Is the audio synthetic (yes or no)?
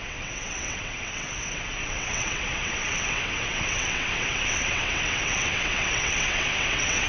yes